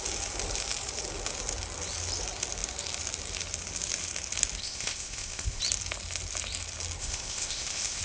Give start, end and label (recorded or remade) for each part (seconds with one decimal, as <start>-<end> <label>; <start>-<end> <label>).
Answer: 0.0-4.6 recorded; 4.6-5.6 remade; 5.6-7.0 recorded; 7.0-8.0 remade